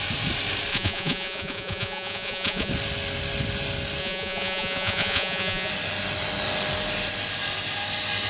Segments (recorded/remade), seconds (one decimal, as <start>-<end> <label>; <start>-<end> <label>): 0.0-0.7 recorded; 0.7-2.7 remade; 2.7-4.0 recorded; 4.0-5.7 remade; 5.7-8.3 recorded